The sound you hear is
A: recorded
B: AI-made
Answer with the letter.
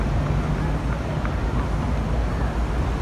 A